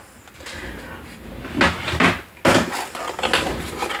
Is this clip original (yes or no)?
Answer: yes